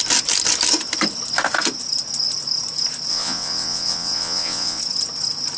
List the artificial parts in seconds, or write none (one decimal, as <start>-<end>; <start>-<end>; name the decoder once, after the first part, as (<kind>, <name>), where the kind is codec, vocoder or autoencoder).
3.1-4.8 (vocoder, WaveNeXt)